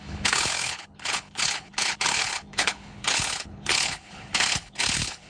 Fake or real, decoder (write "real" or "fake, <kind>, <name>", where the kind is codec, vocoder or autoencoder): fake, codec, HILCodec